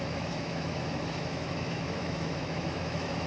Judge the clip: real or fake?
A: fake